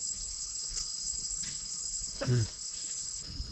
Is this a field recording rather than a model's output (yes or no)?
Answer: no